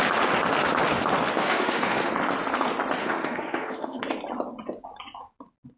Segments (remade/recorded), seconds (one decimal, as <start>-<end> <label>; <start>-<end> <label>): 0.0-1.4 recorded; 1.4-2.1 remade; 2.1-3.0 recorded; 3.0-4.0 remade; 4.0-5.8 recorded